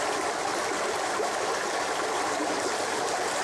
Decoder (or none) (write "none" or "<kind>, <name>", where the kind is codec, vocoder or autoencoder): none